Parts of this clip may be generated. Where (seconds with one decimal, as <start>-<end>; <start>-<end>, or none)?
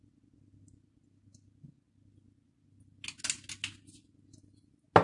none